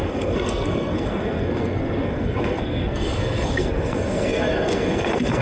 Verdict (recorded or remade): remade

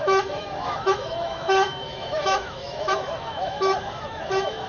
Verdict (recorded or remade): remade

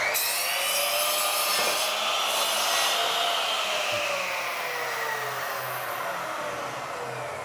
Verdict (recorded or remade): recorded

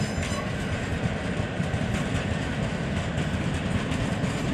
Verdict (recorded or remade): recorded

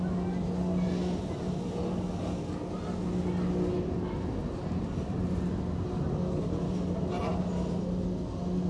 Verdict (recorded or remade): recorded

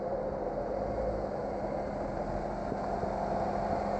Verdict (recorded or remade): recorded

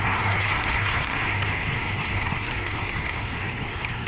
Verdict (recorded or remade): remade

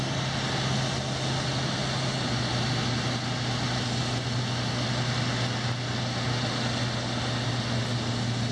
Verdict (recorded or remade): recorded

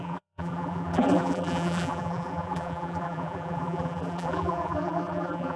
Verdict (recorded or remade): remade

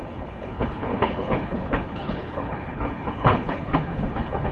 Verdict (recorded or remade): remade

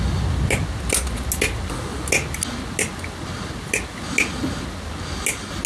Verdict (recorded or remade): recorded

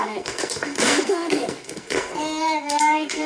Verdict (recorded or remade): remade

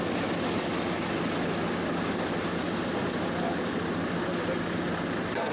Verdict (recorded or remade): recorded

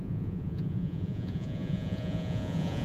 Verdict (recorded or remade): remade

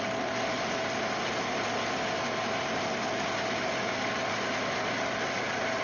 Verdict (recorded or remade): recorded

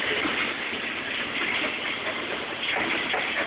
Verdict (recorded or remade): recorded